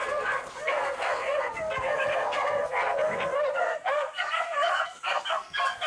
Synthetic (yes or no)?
yes